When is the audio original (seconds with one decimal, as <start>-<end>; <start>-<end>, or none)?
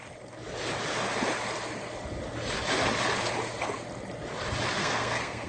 0.0-4.8